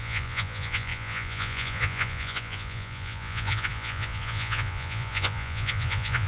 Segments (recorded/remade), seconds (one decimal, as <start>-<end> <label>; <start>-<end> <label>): 0.0-6.3 remade